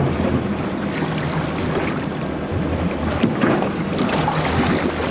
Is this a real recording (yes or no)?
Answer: yes